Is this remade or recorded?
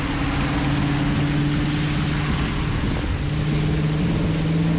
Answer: recorded